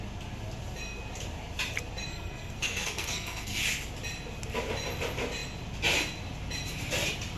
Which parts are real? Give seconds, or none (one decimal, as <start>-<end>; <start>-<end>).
0.0-2.1; 3.6-7.4